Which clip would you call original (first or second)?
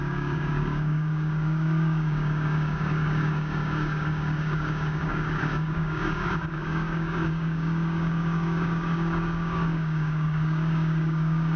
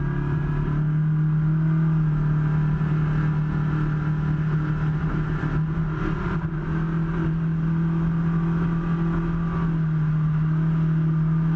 second